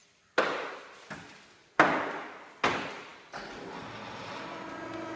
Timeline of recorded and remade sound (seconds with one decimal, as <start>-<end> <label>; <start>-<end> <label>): 0.0-5.2 recorded